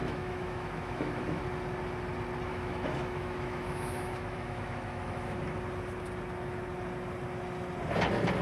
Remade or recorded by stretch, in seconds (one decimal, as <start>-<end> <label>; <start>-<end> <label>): 0.0-1.4 remade; 1.4-2.5 recorded; 2.5-5.4 remade; 5.4-8.4 recorded